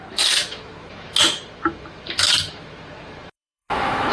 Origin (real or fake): fake